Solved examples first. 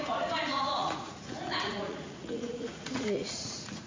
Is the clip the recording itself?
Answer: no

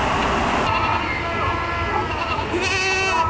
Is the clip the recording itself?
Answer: yes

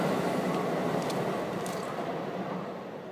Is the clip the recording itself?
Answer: yes